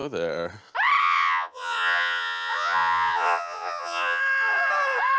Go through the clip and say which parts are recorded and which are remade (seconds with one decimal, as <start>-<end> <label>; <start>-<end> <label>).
0.0-1.0 recorded; 1.0-4.2 remade; 4.2-5.2 recorded